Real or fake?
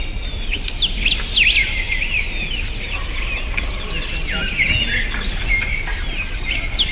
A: real